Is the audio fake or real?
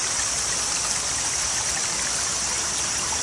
real